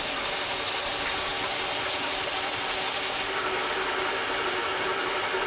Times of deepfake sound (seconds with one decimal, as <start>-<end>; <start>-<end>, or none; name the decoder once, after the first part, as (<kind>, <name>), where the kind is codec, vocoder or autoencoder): none